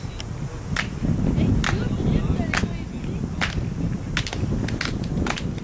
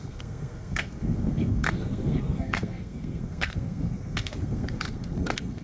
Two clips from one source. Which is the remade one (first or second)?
second